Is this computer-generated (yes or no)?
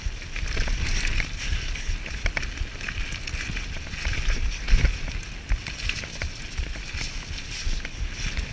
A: no